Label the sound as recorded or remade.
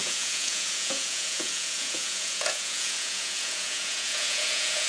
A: remade